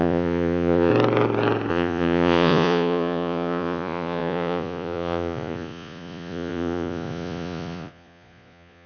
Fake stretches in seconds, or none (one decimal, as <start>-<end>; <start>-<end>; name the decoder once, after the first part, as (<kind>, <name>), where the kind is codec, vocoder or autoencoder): 0.0-0.9 (vocoder, Vocos); 1.7-8.9